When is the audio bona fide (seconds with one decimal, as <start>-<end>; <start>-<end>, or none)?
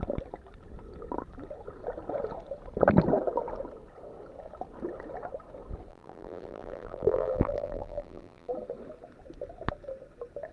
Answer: 0.0-5.9; 8.5-10.5